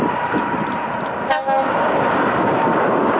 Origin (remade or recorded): recorded